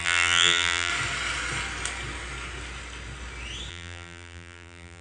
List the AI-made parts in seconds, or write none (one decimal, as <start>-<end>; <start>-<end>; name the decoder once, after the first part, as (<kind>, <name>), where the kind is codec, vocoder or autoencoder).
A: 0.0-0.9 (vocoder, BigVGAN v2); 3.7-5.0